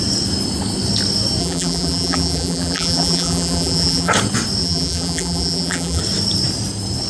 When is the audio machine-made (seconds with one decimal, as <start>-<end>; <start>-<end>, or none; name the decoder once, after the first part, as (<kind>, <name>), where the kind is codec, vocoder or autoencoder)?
1.4-4.1 (vocoder, BigVGAN v2); 4.6-6.0